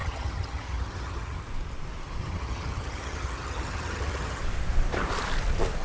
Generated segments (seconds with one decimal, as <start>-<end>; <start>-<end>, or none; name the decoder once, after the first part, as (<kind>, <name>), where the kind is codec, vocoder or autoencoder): 0.0-1.4 (vocoder, HiFi-GAN); 2.2-4.4